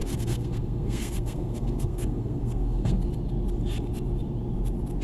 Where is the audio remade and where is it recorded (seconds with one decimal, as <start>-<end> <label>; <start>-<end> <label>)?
0.0-3.0 remade; 3.0-5.0 recorded